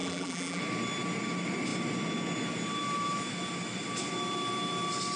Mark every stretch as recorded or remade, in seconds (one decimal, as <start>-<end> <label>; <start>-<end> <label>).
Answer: 0.0-0.6 remade; 0.6-5.2 recorded

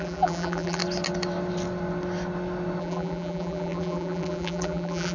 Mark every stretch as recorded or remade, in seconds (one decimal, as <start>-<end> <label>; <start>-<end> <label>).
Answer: 0.0-0.8 remade; 0.8-2.8 recorded; 2.8-5.1 remade

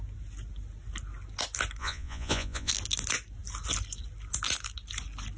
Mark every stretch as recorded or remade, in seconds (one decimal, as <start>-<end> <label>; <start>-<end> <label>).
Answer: 0.0-1.8 recorded; 1.8-2.7 remade; 2.7-5.4 recorded

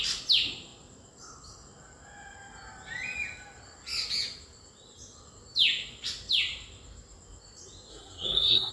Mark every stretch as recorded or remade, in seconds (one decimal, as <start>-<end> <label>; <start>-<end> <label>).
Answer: 0.0-7.9 recorded; 7.9-8.7 remade

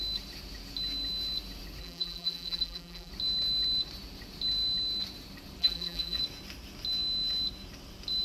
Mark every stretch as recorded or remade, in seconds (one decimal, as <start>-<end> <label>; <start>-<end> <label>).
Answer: 0.0-1.8 recorded; 1.8-3.1 remade; 3.1-5.6 recorded; 5.6-6.2 remade; 6.2-8.2 recorded

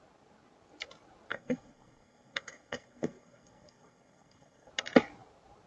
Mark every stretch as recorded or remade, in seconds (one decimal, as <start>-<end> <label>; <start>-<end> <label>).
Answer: 0.0-1.3 recorded; 1.3-4.7 remade; 4.7-5.7 recorded

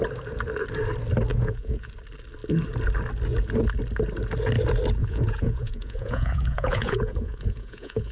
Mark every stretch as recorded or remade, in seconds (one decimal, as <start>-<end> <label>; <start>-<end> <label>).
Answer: 0.0-1.3 recorded; 1.3-1.9 remade; 1.9-5.0 recorded; 5.0-8.1 remade

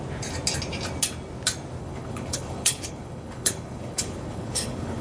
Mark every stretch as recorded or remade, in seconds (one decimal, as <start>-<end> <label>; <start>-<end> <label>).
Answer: 0.0-1.8 recorded; 1.8-5.0 remade